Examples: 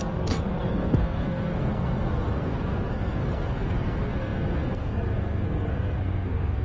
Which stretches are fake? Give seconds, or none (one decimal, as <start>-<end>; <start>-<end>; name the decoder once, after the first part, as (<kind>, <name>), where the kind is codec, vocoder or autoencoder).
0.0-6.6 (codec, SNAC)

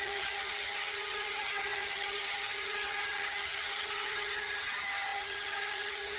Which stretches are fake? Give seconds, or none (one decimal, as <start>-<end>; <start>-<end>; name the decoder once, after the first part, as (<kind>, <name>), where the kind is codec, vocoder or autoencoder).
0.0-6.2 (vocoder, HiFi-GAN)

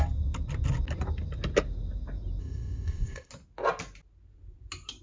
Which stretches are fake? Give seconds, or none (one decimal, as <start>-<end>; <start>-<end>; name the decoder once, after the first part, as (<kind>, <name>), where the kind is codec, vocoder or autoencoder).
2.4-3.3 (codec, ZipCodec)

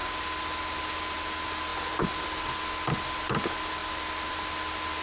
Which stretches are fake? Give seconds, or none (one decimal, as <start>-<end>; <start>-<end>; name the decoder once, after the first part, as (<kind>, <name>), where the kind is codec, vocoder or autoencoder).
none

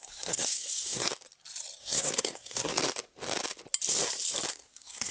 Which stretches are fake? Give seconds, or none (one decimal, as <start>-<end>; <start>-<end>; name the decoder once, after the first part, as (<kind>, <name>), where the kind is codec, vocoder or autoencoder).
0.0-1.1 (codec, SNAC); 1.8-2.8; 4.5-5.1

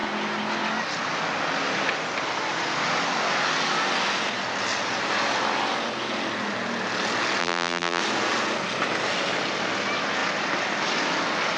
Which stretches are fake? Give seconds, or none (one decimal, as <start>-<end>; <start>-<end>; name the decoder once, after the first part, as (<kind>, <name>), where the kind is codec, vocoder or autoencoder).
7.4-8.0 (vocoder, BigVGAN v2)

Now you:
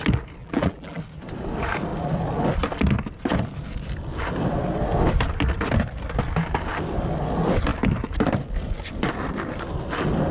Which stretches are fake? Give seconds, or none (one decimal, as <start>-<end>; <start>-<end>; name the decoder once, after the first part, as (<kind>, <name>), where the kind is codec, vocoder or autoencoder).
0.4-1.0 (vocoder, BigVGAN v2)

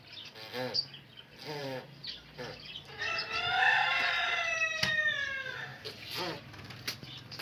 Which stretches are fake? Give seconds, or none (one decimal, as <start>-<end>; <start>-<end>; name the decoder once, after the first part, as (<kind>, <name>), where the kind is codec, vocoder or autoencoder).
1.6-4.9 (vocoder, BigVGAN v2); 5.7-7.4